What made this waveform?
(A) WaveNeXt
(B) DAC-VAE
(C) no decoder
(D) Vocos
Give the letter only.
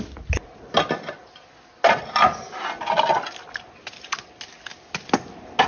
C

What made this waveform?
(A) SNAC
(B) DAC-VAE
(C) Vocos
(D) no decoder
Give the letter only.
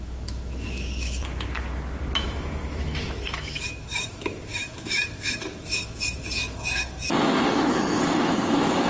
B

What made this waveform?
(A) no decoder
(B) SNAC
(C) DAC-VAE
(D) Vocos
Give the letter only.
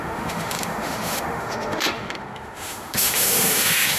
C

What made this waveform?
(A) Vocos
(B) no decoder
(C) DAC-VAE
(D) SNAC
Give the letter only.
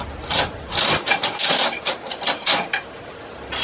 B